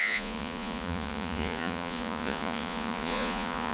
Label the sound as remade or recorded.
remade